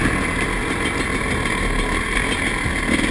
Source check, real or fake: real